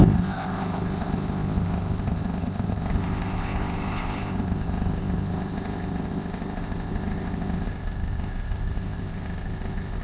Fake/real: fake